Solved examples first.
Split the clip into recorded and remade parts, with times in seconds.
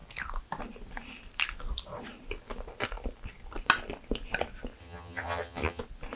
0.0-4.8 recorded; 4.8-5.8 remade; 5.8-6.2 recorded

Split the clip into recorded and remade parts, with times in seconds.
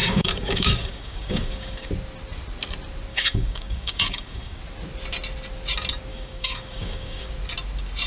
0.0-1.9 remade; 1.9-3.1 recorded; 3.1-4.6 remade; 4.6-6.1 recorded; 6.1-7.3 remade; 7.3-8.1 recorded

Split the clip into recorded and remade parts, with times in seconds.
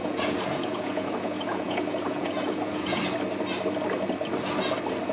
0.0-3.0 remade; 3.0-5.1 recorded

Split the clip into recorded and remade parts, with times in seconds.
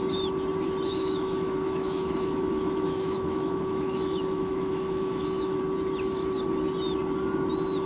0.0-0.9 recorded; 0.9-5.6 remade; 5.6-7.9 recorded